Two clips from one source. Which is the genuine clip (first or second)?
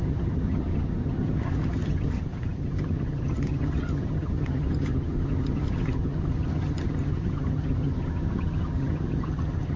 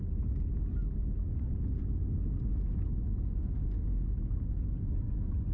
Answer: second